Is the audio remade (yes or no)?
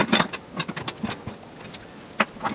no